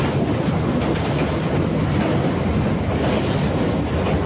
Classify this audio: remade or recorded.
recorded